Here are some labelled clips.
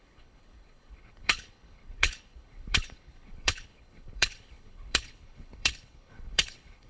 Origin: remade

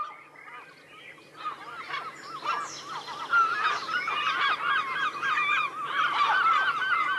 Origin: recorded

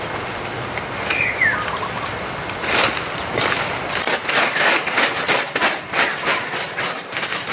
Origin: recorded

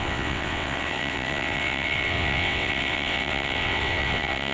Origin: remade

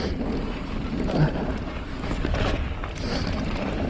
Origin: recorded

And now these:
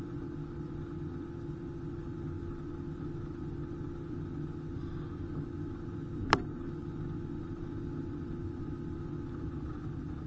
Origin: recorded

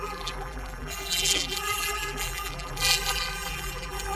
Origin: remade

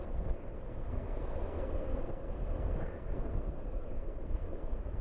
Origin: remade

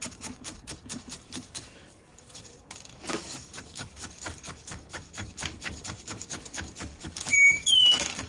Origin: remade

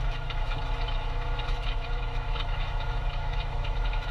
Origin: remade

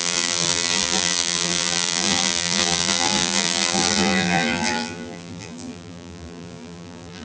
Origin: remade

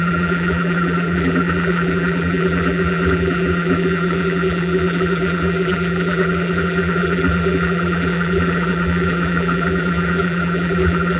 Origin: remade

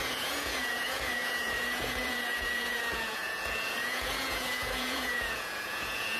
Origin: remade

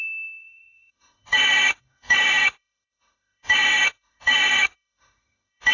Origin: remade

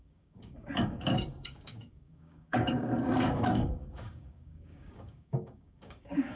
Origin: remade